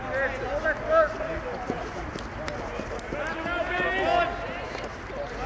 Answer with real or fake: real